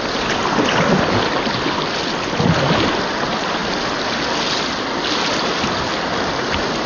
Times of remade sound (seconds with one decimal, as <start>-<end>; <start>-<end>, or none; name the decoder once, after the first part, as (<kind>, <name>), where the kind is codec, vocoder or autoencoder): none